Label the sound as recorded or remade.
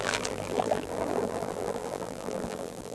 remade